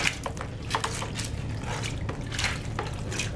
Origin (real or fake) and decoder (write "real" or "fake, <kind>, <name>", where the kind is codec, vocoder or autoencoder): real